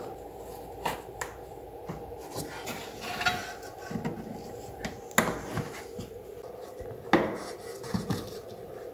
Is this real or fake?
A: real